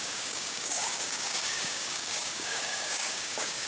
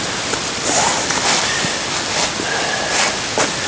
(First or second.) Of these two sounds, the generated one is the first